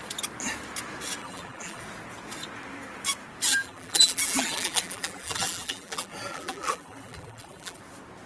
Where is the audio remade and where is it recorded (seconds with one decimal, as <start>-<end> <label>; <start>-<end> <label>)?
0.0-1.2 recorded; 1.2-1.8 remade; 1.8-3.5 recorded; 3.5-7.8 remade; 7.8-8.3 recorded